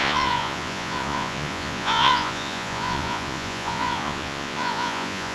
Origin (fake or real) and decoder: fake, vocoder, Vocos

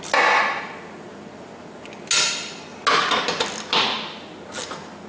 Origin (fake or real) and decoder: real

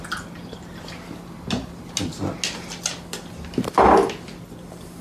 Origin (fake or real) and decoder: real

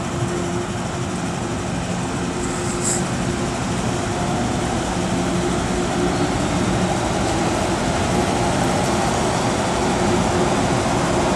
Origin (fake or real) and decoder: real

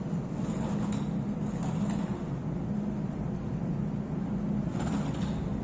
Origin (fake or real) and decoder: real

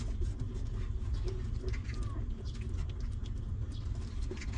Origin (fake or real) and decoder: real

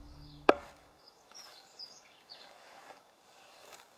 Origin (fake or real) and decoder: fake, codec, DAC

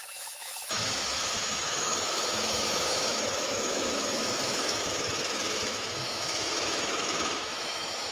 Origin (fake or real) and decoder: fake, autoencoder, DAC-VAE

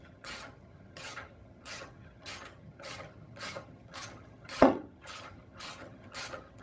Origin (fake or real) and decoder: fake, vocoder, HiFi-GAN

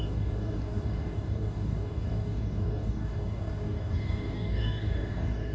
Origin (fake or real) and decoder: fake, codec, DAC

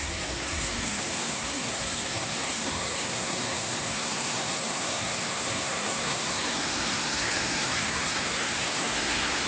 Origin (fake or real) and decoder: fake, codec, SNAC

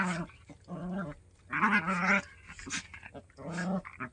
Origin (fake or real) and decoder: real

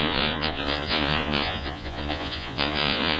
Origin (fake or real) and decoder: fake, vocoder, Vocos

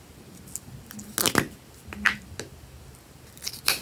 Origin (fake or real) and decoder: real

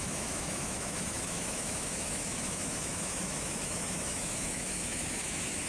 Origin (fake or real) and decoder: fake, autoencoder, DAC-VAE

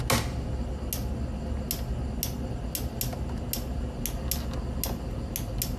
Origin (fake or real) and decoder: real